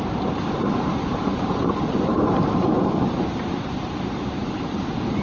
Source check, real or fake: fake